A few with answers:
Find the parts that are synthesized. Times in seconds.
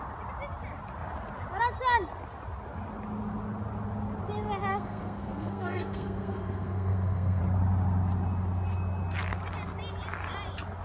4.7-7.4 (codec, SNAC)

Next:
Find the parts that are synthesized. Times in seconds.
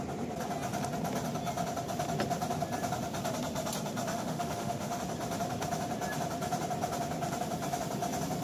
4.1-5.0 (autoencoder, DAC-VAE)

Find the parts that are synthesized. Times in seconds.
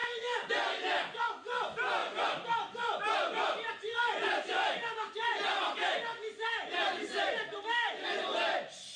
0.0-0.5 (vocoder, BigVGAN v2); 2.0-3.7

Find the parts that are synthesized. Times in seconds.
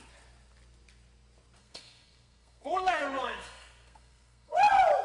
1.6-4.6 (codec, SNAC)